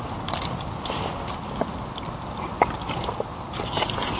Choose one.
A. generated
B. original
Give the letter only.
B